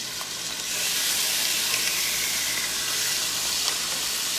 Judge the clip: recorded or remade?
remade